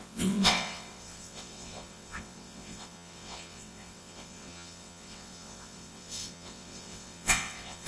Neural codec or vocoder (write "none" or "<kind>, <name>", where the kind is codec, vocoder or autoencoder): vocoder, WaveNeXt